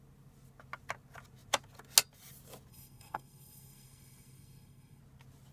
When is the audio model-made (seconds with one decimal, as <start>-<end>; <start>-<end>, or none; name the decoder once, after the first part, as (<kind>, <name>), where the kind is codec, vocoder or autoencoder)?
2.7-5.0 (codec, SNAC)